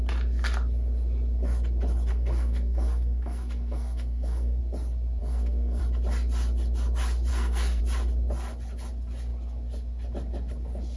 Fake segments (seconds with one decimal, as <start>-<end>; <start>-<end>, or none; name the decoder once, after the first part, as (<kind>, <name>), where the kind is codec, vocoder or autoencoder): 2.1-4.6 (codec, SNAC); 5.2-5.8; 7.3-7.8